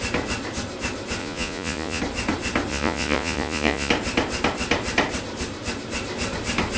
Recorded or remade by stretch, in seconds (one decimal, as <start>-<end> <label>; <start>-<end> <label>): 0.0-1.2 recorded; 1.2-2.0 remade; 2.0-2.7 recorded; 2.7-3.9 remade; 3.9-6.8 recorded